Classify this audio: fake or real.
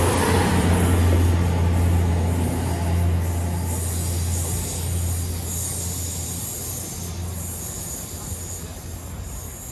real